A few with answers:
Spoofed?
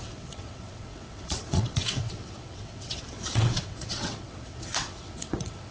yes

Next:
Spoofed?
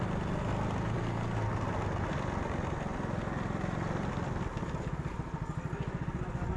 no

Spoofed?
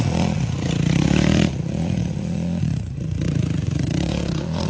yes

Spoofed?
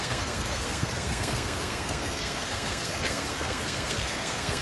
yes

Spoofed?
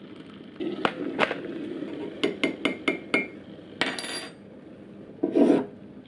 no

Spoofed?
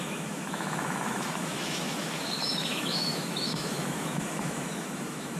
yes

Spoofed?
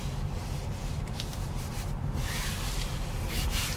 yes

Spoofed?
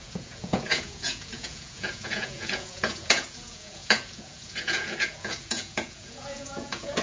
yes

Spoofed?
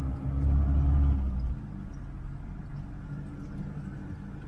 no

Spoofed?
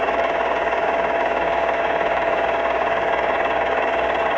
yes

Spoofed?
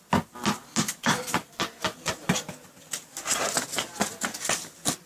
no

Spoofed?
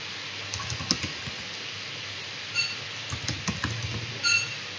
no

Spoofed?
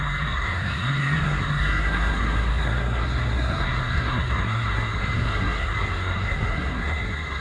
yes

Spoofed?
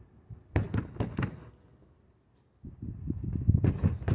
no